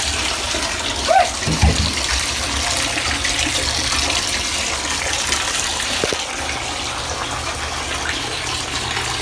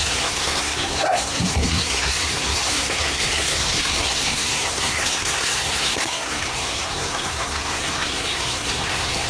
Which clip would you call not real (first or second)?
second